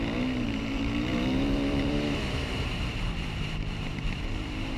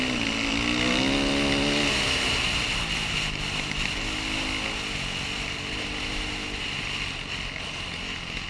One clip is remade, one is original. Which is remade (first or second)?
first